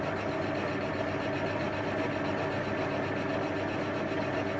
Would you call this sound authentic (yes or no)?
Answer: yes